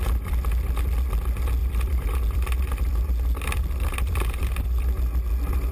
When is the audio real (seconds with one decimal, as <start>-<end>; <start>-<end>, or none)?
0.0-1.6; 5.0-5.7